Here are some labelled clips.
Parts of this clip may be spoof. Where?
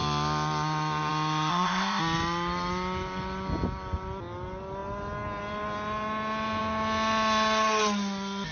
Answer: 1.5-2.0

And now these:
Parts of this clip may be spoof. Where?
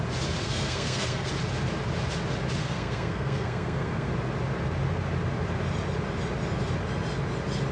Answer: 0.4-1.3; 2.6-4.1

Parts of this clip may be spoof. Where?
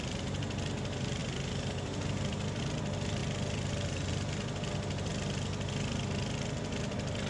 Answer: none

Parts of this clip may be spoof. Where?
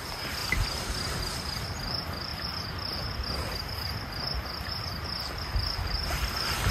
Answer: none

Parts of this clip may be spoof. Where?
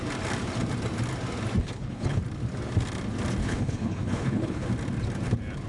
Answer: 1.6-2.2; 3.4-4.7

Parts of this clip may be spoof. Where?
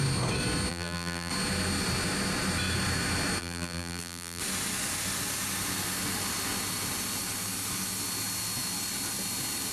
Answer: 0.7-1.3; 3.4-4.4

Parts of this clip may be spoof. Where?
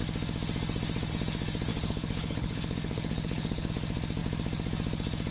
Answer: 1.7-3.7